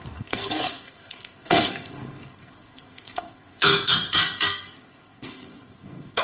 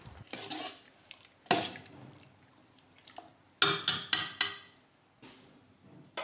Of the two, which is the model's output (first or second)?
first